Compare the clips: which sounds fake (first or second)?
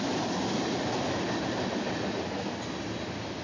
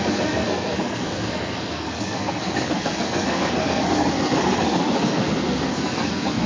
second